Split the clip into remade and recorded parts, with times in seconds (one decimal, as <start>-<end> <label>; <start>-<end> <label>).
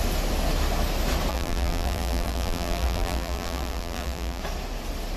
0.0-1.3 recorded; 1.3-4.4 remade; 4.4-5.2 recorded